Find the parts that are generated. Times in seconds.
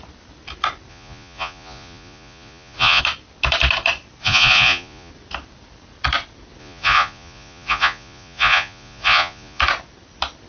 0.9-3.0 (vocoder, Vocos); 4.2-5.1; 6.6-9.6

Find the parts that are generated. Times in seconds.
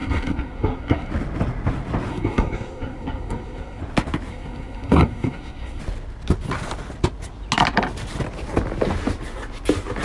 0.0-1.1 (codec, SNAC); 2.1-3.8; 4.3-5.8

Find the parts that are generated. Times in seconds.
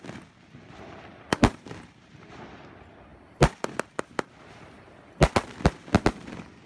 1.4-2.1 (vocoder, BigVGAN v2)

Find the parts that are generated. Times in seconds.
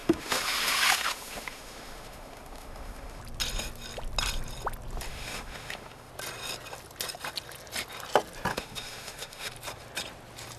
0.0-3.2 (autoencoder, DAC-VAE); 5.1-6.1; 8.5-9.5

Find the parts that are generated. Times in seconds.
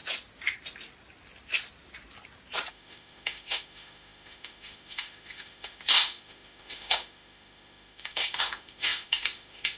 2.7-9.8 (autoencoder, DAC-VAE)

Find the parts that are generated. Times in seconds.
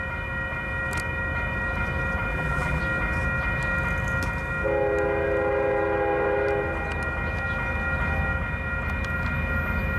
2.3-2.8 (vocoder, BigVGAN v2)